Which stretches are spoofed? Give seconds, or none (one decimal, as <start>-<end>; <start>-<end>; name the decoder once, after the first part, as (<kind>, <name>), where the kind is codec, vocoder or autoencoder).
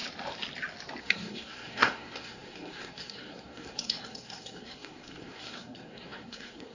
1.0-6.7 (codec, SNAC)